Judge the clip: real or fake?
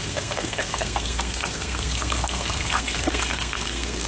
fake